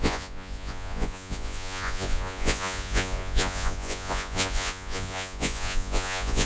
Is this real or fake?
fake